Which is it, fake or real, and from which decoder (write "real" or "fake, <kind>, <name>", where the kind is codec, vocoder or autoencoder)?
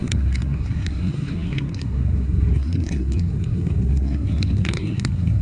fake, codec, SNAC